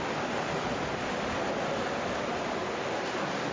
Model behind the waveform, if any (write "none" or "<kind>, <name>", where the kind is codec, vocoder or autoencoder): none